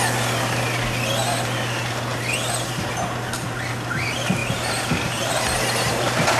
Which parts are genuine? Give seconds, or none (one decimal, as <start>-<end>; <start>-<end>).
0.0-4.4; 5.3-6.4